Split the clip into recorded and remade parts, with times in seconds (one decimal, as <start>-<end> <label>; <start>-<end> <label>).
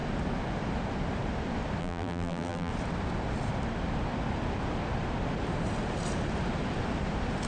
0.0-1.8 recorded; 1.8-2.7 remade; 2.7-7.5 recorded